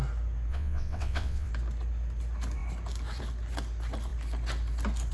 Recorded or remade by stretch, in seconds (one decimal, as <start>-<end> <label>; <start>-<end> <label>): 0.0-0.5 recorded; 0.5-1.5 remade; 1.5-5.1 recorded